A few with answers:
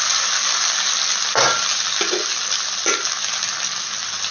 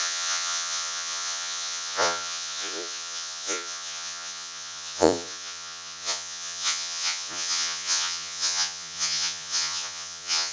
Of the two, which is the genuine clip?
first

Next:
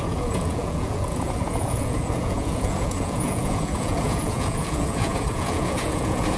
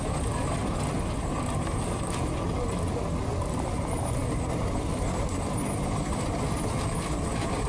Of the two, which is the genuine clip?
second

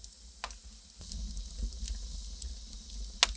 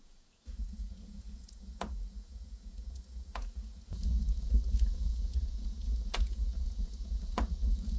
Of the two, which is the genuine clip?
first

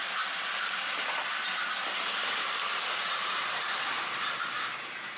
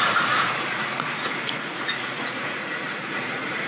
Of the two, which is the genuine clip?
first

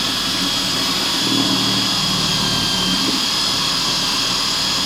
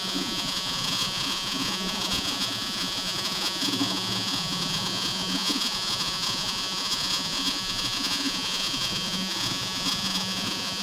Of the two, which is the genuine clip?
first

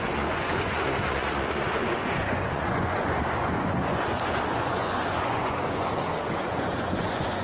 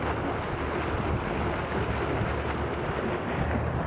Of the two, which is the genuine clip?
second